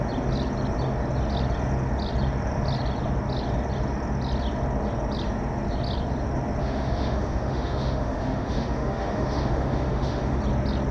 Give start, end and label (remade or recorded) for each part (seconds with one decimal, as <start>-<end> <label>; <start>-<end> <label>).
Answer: 0.0-6.6 recorded; 6.6-10.4 remade; 10.4-10.9 recorded

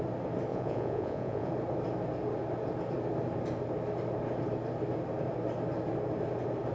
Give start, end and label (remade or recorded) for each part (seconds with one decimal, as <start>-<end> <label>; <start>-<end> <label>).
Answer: 0.0-0.5 recorded; 0.5-1.5 remade; 1.5-6.7 recorded

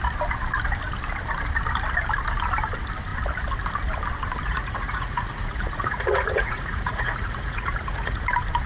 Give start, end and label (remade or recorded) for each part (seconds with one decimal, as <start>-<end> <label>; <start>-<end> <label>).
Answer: 0.0-4.5 recorded; 4.5-8.2 remade; 8.2-8.7 recorded

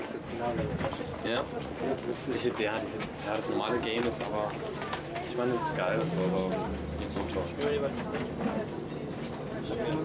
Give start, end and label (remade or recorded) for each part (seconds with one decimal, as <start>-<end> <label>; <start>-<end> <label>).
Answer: 0.0-0.9 recorded; 0.9-2.2 remade; 2.2-10.0 recorded

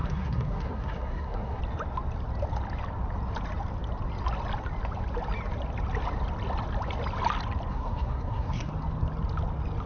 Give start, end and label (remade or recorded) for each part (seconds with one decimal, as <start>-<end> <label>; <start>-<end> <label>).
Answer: 0.0-1.6 remade; 1.6-7.7 recorded; 7.7-8.7 remade; 8.7-9.9 recorded